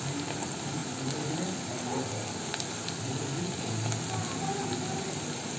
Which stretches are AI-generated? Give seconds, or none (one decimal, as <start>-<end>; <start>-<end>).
none

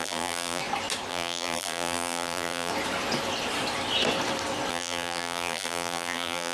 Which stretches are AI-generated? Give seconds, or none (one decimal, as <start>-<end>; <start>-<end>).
0.0-0.6; 1.1-2.7; 4.7-6.5

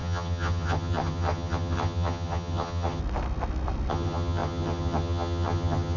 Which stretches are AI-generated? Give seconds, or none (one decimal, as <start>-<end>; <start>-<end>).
0.0-3.0; 3.9-6.0